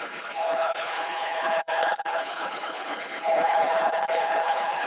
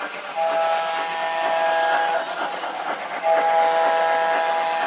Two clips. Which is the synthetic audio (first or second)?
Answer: first